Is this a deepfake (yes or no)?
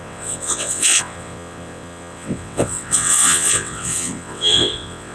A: yes